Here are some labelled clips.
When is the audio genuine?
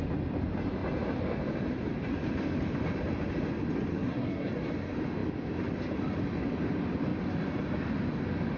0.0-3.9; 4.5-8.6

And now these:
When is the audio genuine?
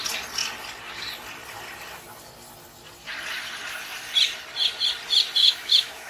0.0-5.4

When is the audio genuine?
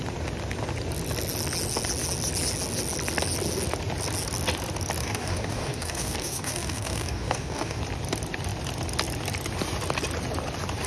0.0-5.0; 7.8-10.9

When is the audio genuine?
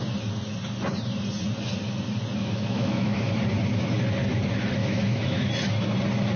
0.0-2.4; 3.3-4.8; 5.5-6.4